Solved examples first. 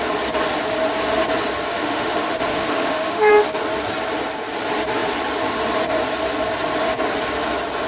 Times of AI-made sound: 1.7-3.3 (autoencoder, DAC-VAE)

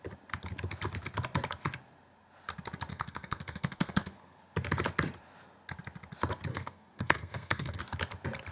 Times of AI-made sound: 2.9-4.4 (codec, SNAC); 6.5-7.8